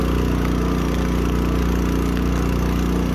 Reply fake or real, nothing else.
real